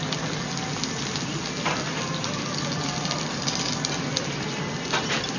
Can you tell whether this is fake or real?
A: real